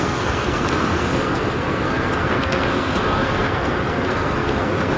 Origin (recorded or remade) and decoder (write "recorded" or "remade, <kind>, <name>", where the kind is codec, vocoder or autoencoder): remade, codec, SNAC